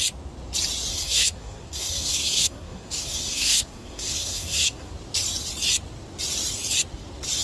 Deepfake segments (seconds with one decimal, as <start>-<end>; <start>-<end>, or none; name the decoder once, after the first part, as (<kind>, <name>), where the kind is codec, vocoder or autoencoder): 0.9-4.9 (codec, SNAC)